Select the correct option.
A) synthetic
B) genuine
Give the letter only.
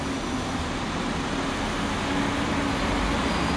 B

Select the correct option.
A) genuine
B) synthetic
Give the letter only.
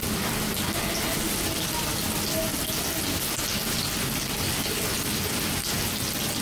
A